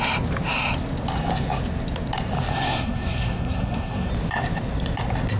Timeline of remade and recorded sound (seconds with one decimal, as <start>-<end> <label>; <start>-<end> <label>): 0.0-2.5 recorded; 2.5-4.1 remade; 4.1-5.4 recorded